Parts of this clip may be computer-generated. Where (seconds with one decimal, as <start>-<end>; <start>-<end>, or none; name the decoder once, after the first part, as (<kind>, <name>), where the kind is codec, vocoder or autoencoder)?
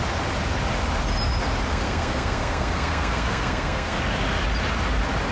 1.7-4.0 (codec, SNAC)